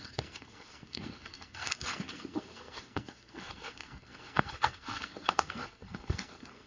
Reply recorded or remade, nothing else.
remade